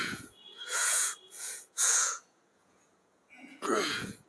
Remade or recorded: remade